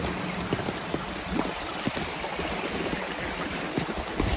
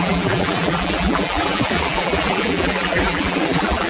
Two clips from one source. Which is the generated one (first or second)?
second